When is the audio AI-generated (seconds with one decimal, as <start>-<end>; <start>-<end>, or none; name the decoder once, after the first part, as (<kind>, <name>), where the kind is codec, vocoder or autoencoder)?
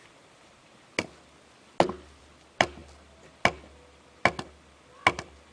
none